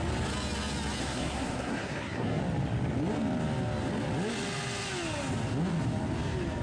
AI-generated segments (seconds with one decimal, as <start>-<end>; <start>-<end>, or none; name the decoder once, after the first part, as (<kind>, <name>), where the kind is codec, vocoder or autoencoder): 1.0-2.4 (codec, SNAC)